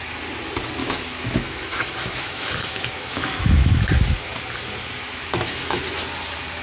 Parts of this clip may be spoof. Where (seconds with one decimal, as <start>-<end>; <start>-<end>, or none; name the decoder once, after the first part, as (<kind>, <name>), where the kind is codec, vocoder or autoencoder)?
0.8-3.8 (autoencoder, DAC-VAE); 5.1-5.8